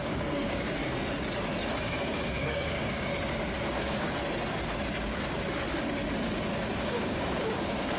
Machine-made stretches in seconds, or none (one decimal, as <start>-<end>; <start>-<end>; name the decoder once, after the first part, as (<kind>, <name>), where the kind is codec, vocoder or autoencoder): 0.0-0.8 (codec, DAC); 2.0-3.1; 3.7-4.2; 6.8-8.0